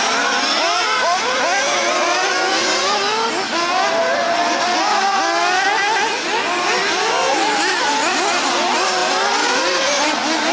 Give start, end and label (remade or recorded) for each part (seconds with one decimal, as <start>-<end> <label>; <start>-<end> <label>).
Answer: 0.0-10.5 recorded